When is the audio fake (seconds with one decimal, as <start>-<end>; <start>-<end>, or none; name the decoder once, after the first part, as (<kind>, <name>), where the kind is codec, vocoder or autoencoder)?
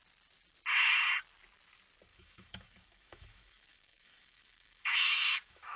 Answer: 2.1-5.8 (autoencoder, DAC-VAE)